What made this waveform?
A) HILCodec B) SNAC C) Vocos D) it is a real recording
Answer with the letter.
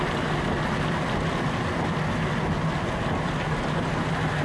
D